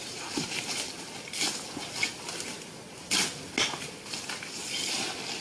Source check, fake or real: real